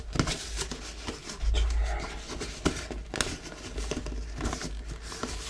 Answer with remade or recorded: recorded